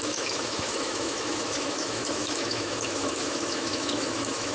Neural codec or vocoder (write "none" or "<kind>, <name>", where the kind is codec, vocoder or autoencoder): autoencoder, DAC-VAE